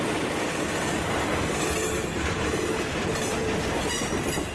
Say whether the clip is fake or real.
real